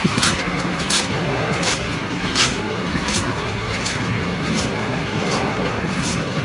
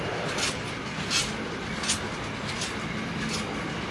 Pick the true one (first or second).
second